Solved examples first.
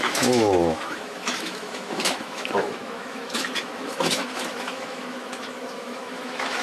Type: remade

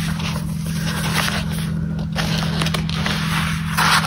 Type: recorded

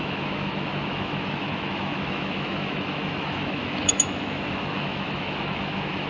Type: remade